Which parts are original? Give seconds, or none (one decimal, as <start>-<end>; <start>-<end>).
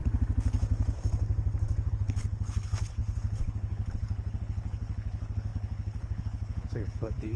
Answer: 0.0-1.9